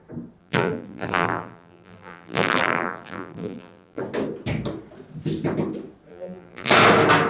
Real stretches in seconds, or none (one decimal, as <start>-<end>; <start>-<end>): 0.0-0.4; 4.0-6.1; 6.7-7.3